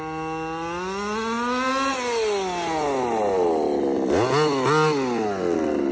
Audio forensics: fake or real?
real